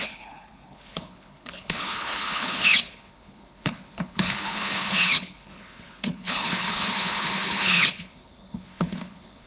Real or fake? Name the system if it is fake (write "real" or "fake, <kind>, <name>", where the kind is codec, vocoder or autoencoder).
fake, codec, HILCodec